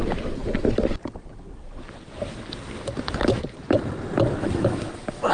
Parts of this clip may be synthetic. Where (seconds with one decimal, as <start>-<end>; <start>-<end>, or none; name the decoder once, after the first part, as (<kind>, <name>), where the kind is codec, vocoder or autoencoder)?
4.4-5.3 (autoencoder, DAC-VAE)